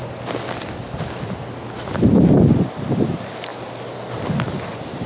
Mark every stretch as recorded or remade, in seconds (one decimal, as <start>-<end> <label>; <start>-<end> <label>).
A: 0.0-5.1 recorded